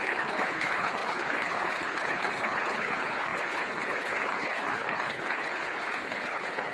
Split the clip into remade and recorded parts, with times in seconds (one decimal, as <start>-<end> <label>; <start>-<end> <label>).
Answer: 0.0-6.7 remade